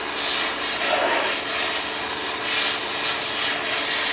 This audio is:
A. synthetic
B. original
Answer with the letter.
B